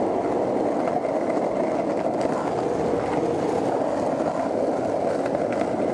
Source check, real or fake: real